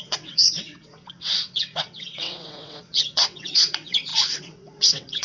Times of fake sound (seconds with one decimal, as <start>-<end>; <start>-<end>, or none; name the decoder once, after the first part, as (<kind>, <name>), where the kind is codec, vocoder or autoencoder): 0.0-5.2 (vocoder, WaveNeXt)